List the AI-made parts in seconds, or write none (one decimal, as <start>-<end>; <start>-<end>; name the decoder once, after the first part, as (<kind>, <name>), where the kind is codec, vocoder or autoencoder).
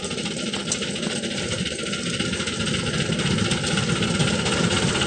none